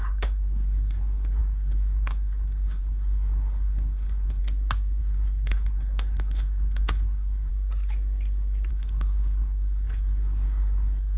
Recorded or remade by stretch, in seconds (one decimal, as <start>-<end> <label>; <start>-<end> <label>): 0.0-4.4 remade; 4.4-5.0 recorded; 5.0-7.5 remade; 7.5-8.7 recorded; 8.7-11.2 remade